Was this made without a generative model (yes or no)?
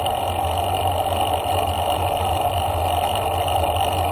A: yes